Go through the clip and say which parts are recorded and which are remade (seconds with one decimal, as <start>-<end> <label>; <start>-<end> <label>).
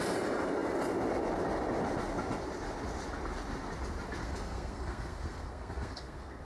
0.0-4.2 recorded; 4.2-6.4 remade